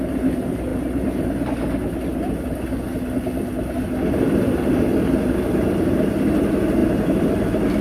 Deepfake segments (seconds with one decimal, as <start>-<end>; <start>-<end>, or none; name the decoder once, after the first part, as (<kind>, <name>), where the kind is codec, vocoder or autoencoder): 6.8-7.3 (vocoder, BigVGAN v2)